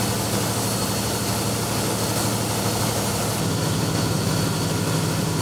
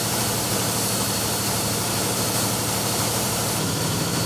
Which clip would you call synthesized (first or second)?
second